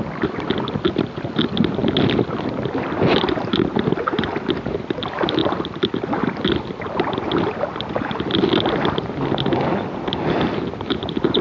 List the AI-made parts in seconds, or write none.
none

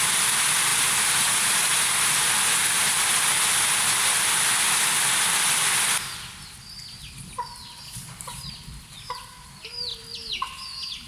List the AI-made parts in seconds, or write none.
none

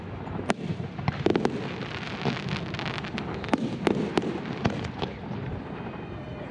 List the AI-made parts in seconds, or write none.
0.0-1.3 (vocoder, BigVGAN v2); 5.2-6.5

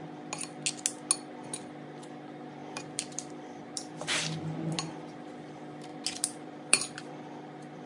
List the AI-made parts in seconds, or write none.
2.6-4.2 (vocoder, BigVGAN v2); 5.9-7.9

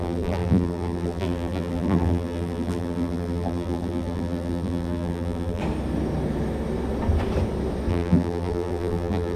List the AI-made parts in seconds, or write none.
0.0-5.6 (vocoder, BigVGAN v2); 7.9-9.4